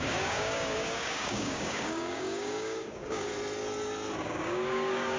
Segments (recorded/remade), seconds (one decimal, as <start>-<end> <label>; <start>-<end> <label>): 0.0-3.3 remade; 3.3-4.2 recorded; 4.2-5.2 remade